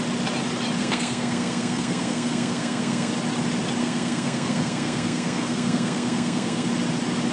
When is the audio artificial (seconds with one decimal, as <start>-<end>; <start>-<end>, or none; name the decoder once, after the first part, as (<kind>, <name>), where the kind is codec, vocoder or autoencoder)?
0.8-3.1 (codec, SNAC); 3.8-6.7